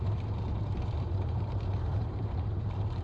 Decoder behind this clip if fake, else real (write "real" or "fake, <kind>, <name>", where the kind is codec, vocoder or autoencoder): fake, vocoder, BigVGAN v2